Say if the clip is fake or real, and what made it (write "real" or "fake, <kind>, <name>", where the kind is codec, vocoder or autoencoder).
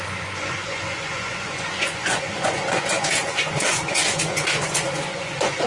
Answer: fake, vocoder, Vocos